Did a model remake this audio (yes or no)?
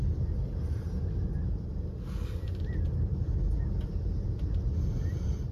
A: no